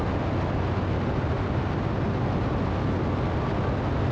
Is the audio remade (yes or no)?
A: no